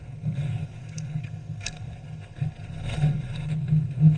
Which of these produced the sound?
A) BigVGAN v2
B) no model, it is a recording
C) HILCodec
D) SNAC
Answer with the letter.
D